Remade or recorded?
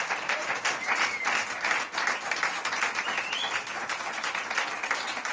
recorded